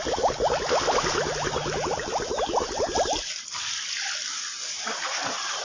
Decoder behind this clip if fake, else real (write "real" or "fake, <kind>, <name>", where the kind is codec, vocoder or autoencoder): real